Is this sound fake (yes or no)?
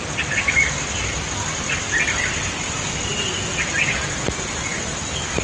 no